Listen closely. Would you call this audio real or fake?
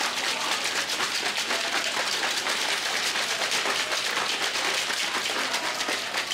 real